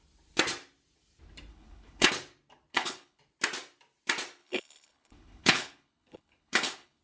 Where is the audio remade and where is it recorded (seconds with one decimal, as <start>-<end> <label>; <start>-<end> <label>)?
0.0-1.5 recorded; 1.5-2.1 remade; 2.1-2.7 recorded; 2.7-3.2 remade; 3.2-4.4 recorded; 4.4-7.0 remade

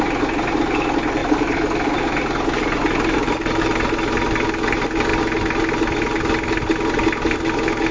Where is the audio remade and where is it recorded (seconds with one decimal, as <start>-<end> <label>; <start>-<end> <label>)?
0.0-1.2 recorded; 1.2-3.6 remade; 3.6-7.9 recorded

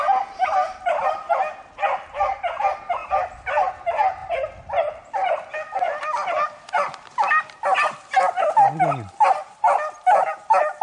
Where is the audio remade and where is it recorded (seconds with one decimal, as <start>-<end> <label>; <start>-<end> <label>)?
0.0-10.8 recorded

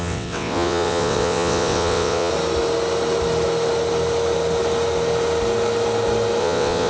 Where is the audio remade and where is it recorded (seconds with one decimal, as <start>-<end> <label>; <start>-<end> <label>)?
0.0-2.3 remade; 2.3-6.4 recorded; 6.4-6.9 remade